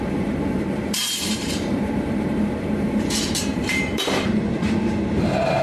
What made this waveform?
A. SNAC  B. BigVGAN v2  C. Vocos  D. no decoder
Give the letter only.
B